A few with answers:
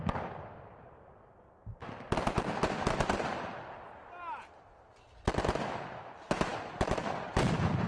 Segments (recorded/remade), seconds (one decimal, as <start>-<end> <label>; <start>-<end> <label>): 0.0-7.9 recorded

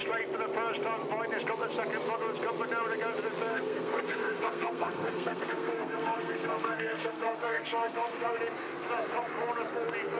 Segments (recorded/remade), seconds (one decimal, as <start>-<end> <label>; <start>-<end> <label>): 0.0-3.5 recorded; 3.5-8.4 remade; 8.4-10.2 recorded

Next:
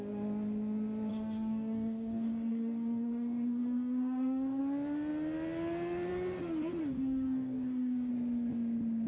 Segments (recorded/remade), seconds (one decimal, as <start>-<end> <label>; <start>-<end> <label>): 0.0-1.1 recorded; 1.1-4.6 remade; 4.6-6.8 recorded; 6.8-8.1 remade; 8.1-9.1 recorded

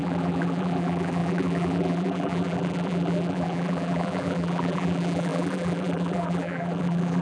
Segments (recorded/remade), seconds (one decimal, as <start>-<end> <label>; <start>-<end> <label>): 0.0-7.2 remade

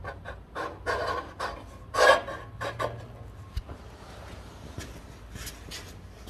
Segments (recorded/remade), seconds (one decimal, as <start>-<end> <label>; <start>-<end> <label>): 0.0-6.3 recorded

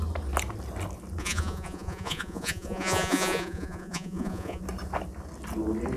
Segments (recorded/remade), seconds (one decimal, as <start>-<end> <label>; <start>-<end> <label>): 0.0-1.2 recorded; 1.2-4.6 remade; 4.6-6.0 recorded

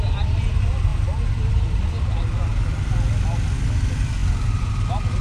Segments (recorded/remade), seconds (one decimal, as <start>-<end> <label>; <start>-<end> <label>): 0.0-5.2 recorded

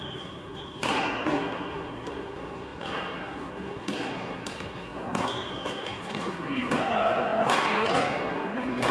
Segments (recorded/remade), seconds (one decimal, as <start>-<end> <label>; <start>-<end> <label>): 0.0-8.9 remade